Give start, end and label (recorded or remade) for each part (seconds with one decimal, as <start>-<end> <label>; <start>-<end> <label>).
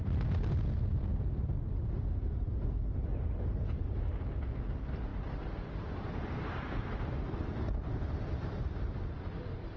0.0-9.8 recorded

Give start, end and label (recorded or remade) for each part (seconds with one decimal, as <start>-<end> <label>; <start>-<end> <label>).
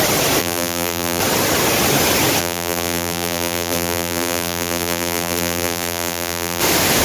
0.0-0.4 recorded; 0.4-1.2 remade; 1.2-2.4 recorded; 2.4-6.6 remade; 6.6-7.0 recorded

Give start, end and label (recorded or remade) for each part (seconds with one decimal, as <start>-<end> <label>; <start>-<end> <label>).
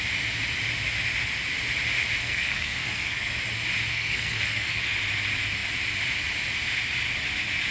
0.0-2.2 recorded; 2.2-3.3 remade; 3.3-3.9 recorded; 3.9-4.8 remade; 4.8-7.7 recorded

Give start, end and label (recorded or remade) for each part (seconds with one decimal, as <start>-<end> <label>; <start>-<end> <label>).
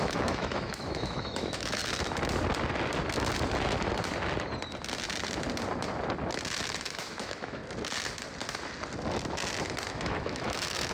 0.0-1.8 remade; 1.8-6.8 recorded; 6.8-7.6 remade; 7.6-9.9 recorded; 9.9-10.9 remade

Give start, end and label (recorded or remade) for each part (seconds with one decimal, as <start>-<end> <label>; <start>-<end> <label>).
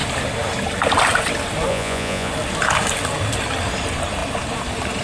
0.0-1.7 recorded; 1.7-2.3 remade; 2.3-5.0 recorded